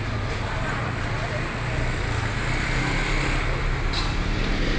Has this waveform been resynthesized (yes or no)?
no